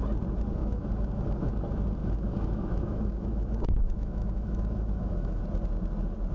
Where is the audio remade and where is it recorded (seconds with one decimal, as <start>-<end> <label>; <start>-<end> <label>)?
0.0-0.6 recorded; 0.6-1.5 remade; 1.5-2.0 recorded; 2.0-5.4 remade; 5.4-6.3 recorded